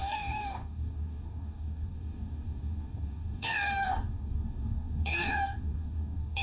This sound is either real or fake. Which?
fake